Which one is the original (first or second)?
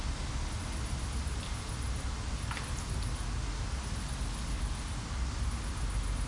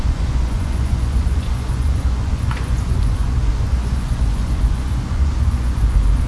first